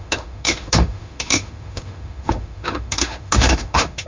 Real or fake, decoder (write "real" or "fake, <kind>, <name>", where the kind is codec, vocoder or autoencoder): fake, autoencoder, DAC-VAE